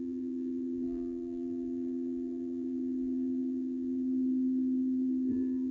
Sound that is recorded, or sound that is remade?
remade